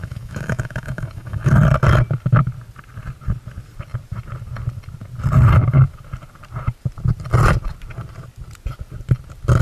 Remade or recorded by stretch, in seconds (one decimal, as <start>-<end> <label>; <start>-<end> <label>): 0.0-1.5 remade; 1.5-9.6 recorded